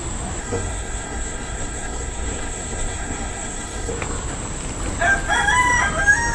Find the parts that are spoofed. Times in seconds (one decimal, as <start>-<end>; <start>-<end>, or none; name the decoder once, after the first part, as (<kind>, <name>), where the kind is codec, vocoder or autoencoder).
0.4-3.9 (codec, SNAC)